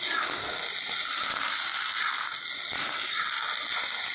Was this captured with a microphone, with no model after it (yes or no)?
yes